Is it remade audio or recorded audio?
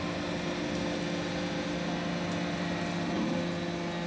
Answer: recorded